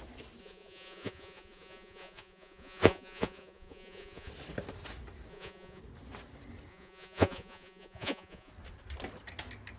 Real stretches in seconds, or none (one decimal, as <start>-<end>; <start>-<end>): 0.0-0.4; 4.3-5.3; 5.8-6.7; 8.5-9.8